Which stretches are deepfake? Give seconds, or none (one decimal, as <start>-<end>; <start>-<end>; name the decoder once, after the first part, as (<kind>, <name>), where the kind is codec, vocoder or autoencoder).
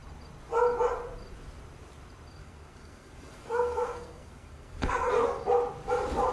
2.4-5.1 (codec, SNAC)